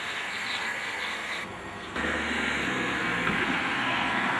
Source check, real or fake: fake